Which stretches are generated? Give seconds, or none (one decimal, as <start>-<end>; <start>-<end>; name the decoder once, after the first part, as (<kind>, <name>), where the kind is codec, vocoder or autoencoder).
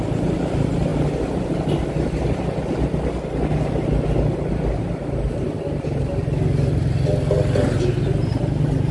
none